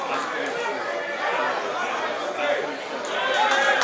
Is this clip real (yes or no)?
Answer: yes